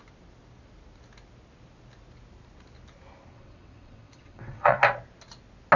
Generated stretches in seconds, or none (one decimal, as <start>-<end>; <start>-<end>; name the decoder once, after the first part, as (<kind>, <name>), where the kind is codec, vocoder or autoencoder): 3.3-4.8 (vocoder, WaveNeXt)